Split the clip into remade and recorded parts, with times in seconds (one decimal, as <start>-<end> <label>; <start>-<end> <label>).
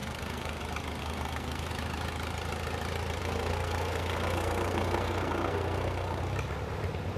0.0-0.6 remade; 0.6-1.0 recorded; 1.0-1.7 remade; 1.7-3.2 recorded; 3.2-6.2 remade; 6.2-7.2 recorded